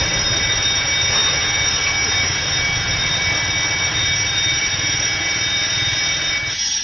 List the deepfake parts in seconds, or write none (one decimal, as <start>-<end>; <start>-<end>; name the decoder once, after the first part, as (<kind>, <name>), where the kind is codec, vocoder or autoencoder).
none